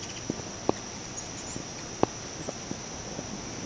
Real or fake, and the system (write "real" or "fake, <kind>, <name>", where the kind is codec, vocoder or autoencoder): real